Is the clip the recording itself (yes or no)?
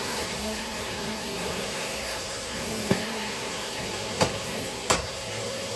no